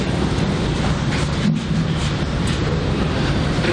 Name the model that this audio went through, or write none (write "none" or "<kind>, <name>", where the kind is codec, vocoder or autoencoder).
none